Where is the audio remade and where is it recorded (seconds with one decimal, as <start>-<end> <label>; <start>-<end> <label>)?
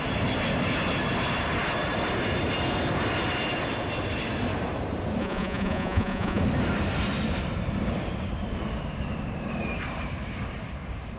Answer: 0.0-5.2 recorded; 5.2-6.4 remade; 6.4-11.2 recorded